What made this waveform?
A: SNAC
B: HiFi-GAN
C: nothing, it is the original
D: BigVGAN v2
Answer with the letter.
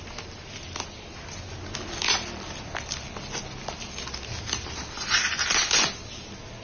C